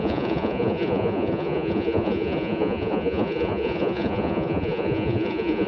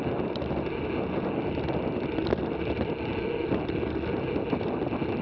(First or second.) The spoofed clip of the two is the first